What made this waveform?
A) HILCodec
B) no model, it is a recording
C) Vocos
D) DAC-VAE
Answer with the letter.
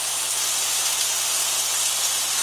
B